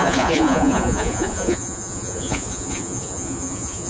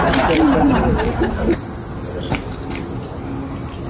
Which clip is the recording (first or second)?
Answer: second